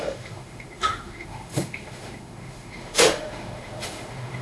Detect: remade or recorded remade